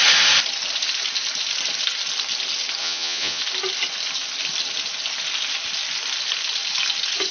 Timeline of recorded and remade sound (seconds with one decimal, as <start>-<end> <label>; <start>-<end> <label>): 0.0-2.8 recorded; 2.8-3.4 remade; 3.4-7.3 recorded